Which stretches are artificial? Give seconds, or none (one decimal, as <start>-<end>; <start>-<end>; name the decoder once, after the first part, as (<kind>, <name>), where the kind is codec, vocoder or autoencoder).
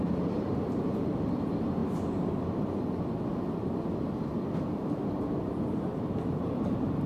0.0-1.8 (vocoder, BigVGAN v2); 6.1-7.1